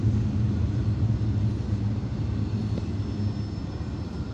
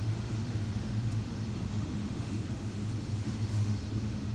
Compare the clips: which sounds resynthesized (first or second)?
second